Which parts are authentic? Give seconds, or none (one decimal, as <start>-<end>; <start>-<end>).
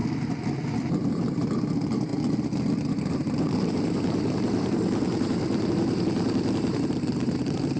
0.0-1.1; 2.1-3.1